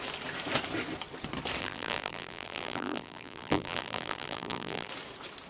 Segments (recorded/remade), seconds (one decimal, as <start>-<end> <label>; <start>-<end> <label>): 0.0-1.6 recorded; 1.6-4.9 remade; 4.9-5.5 recorded